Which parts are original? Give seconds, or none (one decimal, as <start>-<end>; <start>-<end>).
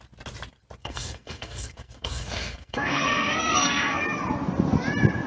0.0-0.8; 4.0-5.3